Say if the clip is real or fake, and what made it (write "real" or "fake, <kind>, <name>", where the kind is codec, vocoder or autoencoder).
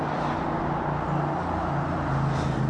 real